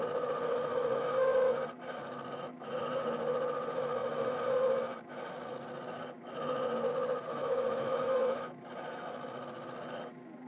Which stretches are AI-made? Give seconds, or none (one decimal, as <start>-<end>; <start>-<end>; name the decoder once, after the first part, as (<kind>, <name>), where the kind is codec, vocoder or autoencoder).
7.4-8.7 (autoencoder, DAC-VAE)

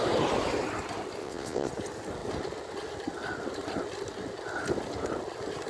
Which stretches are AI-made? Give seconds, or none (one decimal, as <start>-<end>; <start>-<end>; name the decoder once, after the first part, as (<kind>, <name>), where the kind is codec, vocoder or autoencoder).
1.2-1.7 (vocoder, WaveNeXt)